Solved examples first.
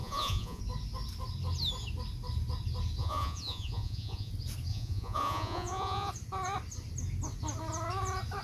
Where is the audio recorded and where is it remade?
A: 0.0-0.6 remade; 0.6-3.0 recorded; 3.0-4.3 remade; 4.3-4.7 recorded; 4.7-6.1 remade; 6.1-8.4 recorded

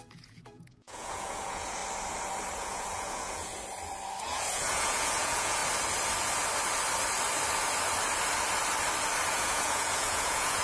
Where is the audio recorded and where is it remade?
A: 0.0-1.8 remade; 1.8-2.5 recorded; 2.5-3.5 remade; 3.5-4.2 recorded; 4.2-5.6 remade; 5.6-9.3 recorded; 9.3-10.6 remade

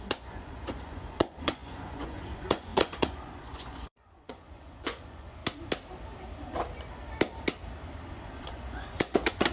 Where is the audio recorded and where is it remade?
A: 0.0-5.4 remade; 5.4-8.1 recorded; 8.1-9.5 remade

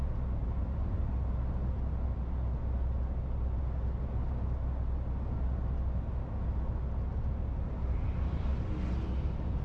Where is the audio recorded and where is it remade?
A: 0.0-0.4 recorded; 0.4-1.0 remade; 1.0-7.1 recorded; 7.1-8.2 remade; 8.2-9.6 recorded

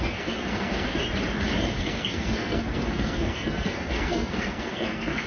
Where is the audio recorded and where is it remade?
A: 0.0-1.0 remade; 1.0-1.8 recorded; 1.8-5.3 remade

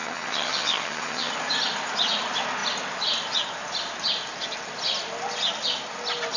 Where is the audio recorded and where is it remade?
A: 0.0-1.3 remade; 1.3-6.4 recorded